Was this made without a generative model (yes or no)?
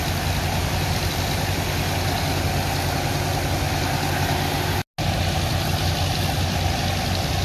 yes